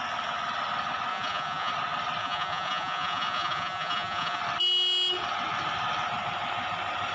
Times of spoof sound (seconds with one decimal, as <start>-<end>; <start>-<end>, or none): 1.1-1.7; 2.2-4.4